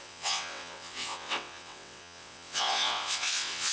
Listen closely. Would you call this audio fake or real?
fake